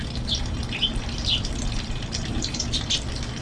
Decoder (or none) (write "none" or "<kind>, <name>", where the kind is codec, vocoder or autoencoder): vocoder, BigVGAN v2